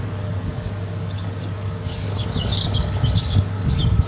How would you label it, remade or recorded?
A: remade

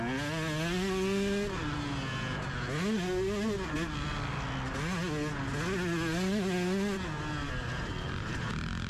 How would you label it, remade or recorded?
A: recorded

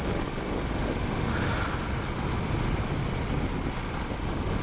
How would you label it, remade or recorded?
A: recorded